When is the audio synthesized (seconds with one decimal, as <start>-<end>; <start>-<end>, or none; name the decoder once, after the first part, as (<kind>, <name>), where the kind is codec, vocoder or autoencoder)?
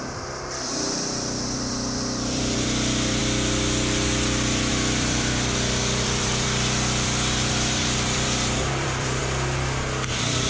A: 0.0-3.2 (vocoder, BigVGAN v2); 4.7-9.2; 10.1-10.5